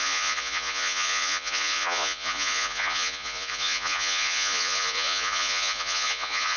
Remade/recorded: remade